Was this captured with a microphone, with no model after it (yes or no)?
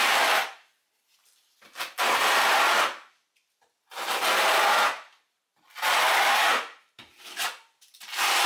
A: no